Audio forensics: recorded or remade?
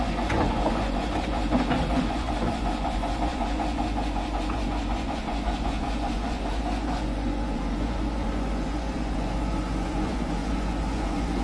remade